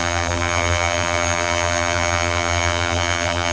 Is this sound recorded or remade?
remade